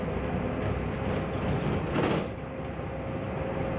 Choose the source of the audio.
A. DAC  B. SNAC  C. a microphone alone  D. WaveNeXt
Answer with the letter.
C